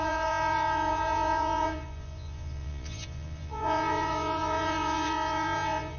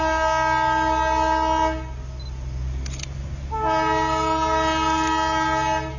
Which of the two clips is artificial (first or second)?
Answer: first